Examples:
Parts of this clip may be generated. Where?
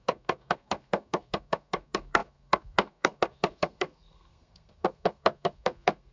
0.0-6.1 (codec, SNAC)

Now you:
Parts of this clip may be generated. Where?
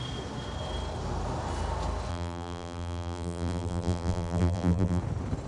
2.1-5.0 (vocoder, BigVGAN v2)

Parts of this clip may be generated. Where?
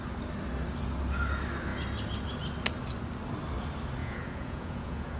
4.0-5.2 (vocoder, Vocos)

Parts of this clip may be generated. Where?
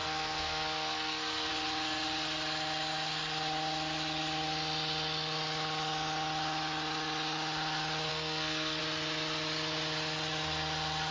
0.0-1.5 (codec, SNAC); 8.1-8.8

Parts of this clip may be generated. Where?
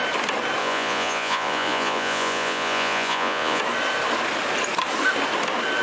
0.6-3.6 (vocoder, Vocos)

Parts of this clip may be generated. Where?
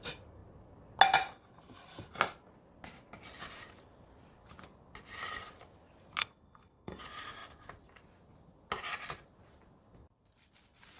6.2-7.0 (codec, SNAC)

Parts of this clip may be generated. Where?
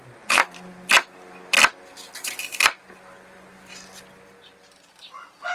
none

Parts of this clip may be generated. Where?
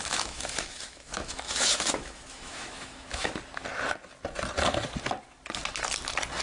0.0-3.3 (autoencoder, DAC-VAE)